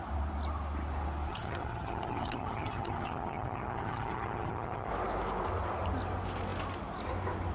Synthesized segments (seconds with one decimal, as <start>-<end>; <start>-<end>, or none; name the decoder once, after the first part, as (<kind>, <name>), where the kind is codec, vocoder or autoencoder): 1.3-4.9 (vocoder, HiFi-GAN)